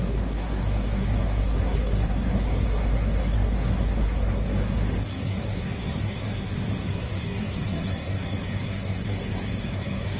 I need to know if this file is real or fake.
fake